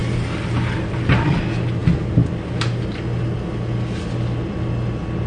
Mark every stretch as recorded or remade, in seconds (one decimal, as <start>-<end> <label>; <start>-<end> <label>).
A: 0.0-1.4 remade; 1.4-5.3 recorded